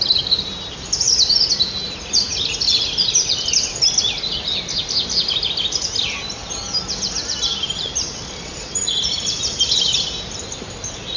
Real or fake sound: real